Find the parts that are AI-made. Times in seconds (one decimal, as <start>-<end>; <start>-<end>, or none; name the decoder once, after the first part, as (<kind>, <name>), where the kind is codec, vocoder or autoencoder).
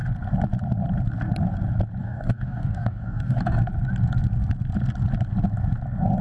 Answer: 2.0-3.4 (codec, DAC)